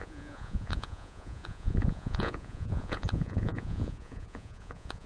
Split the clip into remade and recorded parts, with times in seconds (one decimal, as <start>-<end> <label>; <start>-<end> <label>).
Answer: 0.0-5.1 remade